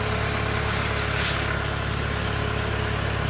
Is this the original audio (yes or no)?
yes